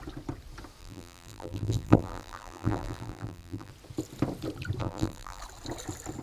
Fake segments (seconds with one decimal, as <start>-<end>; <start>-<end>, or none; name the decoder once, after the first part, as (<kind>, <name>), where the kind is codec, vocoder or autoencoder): 0.8-3.7 (vocoder, BigVGAN v2); 4.8-5.4